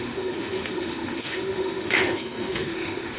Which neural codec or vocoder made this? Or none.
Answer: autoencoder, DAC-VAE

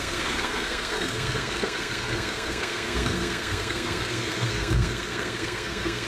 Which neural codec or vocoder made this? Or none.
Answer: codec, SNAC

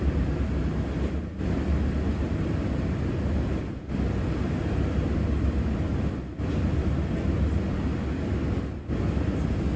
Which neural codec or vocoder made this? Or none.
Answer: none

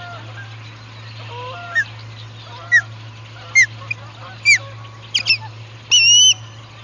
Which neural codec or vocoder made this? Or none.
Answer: none